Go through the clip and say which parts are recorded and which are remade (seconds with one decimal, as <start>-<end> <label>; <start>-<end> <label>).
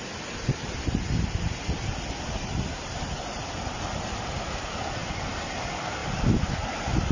0.0-7.1 recorded